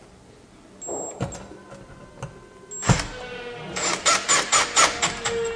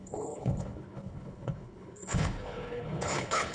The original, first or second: first